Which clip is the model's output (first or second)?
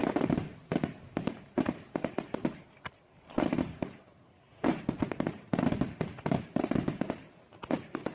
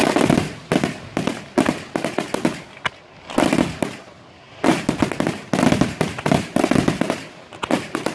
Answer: first